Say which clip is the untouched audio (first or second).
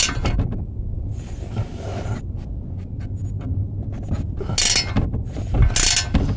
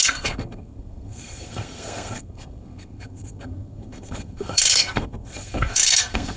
first